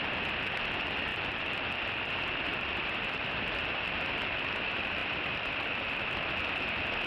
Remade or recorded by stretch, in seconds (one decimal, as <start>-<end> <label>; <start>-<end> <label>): 0.0-1.1 recorded; 1.1-2.1 remade; 2.1-2.5 recorded; 2.5-3.4 remade; 3.4-5.0 recorded; 5.0-6.1 remade; 6.1-7.1 recorded